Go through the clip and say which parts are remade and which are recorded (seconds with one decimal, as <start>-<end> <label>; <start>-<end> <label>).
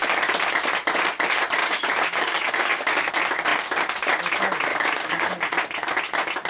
0.0-1.6 recorded; 1.6-3.1 remade; 3.1-4.7 recorded; 4.7-5.3 remade; 5.3-6.5 recorded